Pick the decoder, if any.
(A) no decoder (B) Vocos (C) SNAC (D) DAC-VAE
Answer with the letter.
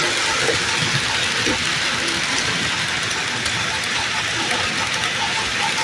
A